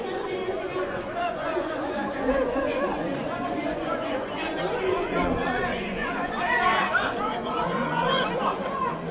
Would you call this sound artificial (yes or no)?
yes